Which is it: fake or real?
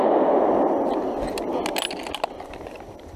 real